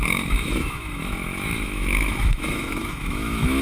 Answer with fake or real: fake